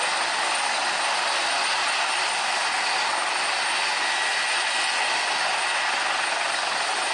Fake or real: real